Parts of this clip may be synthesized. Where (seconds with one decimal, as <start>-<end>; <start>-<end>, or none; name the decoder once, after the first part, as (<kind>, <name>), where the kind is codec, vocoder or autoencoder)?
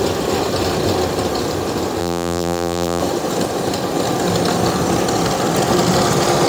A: 2.0-3.0 (vocoder, BigVGAN v2)